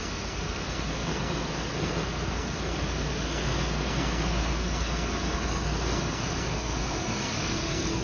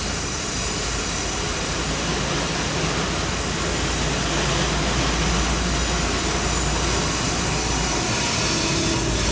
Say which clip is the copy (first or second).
first